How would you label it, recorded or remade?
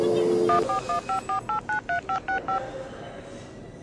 recorded